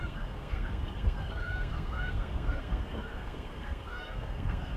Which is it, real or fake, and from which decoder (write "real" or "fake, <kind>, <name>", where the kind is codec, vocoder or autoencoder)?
fake, codec, SNAC